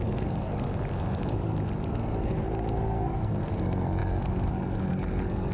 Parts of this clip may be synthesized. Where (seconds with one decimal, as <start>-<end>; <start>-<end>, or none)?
0.0-0.7; 1.9-5.5